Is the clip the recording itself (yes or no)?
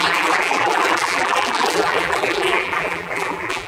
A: no